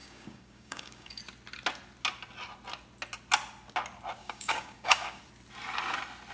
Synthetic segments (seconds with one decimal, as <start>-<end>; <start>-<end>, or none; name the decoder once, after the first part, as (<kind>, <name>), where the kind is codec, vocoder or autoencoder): 0.0-1.2 (codec, DAC); 4.2-5.2